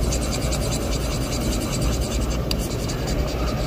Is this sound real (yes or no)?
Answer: yes